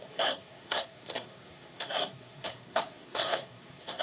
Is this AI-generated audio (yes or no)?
yes